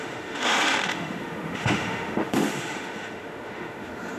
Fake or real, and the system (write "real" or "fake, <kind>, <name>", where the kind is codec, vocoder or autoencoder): fake, autoencoder, DAC-VAE